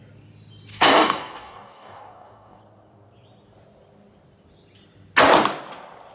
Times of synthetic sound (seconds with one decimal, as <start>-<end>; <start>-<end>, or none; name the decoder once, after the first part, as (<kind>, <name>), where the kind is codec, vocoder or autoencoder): 0.7-2.6 (codec, DAC)